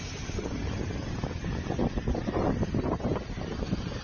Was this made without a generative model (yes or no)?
yes